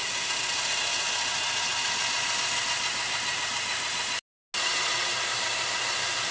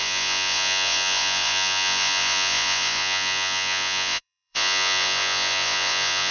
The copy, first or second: second